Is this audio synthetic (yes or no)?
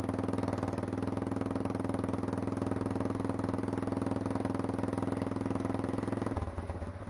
no